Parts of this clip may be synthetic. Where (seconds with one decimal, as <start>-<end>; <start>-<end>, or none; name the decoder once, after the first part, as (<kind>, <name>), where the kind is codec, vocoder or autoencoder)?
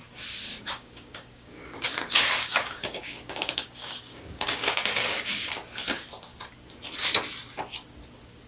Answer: 0.5-5.5 (codec, DAC)